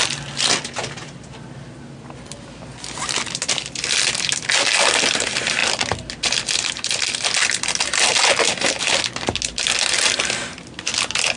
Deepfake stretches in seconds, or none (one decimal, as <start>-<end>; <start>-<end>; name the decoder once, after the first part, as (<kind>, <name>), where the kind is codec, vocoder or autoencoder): none